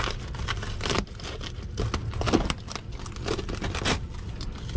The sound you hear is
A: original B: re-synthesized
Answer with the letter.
A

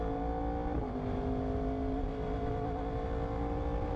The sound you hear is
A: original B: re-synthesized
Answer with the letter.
A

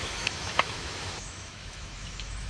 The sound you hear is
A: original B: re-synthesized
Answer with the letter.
B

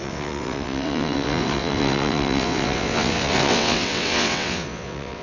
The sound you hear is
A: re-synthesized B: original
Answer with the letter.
A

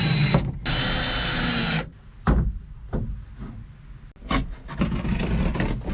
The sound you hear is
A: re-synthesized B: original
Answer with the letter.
B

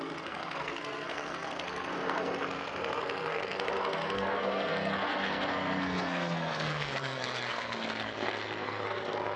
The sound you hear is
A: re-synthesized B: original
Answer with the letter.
A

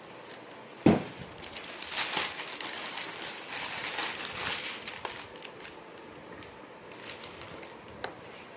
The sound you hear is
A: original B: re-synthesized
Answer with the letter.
A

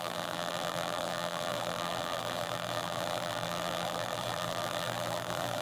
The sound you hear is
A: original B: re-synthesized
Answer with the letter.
B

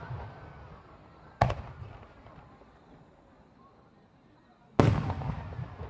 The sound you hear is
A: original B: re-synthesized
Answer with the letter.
A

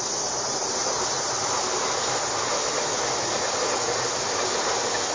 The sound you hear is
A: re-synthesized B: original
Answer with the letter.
B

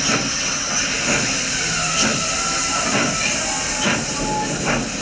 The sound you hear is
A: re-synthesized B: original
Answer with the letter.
B